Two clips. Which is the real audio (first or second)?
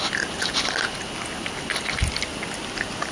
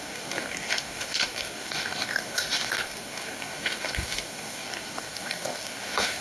first